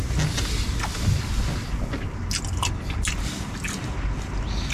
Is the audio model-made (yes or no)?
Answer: no